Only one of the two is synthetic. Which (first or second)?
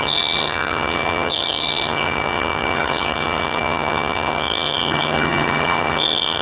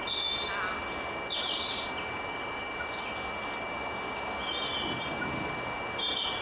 first